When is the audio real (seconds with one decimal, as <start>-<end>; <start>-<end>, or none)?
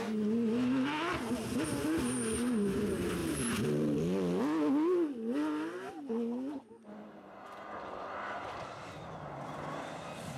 0.0-3.2; 4.4-10.4